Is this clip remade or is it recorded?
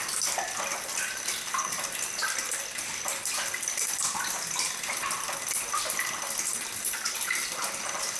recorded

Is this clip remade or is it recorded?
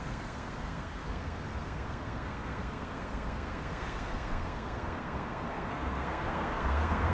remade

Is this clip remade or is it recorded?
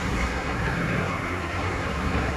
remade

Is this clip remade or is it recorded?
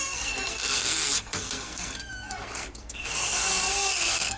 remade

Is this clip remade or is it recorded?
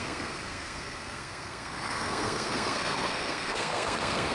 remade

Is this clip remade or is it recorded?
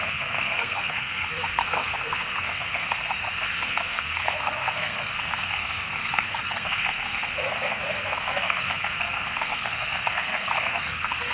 remade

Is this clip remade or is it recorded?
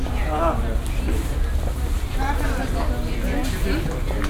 recorded